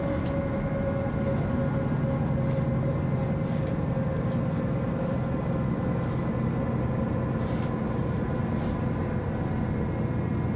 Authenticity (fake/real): real